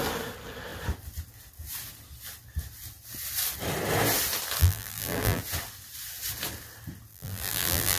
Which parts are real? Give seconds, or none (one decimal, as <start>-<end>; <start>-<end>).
0.0-4.6; 5.4-7.1